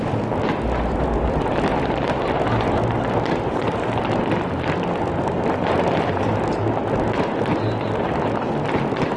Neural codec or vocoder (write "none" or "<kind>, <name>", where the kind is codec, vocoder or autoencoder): none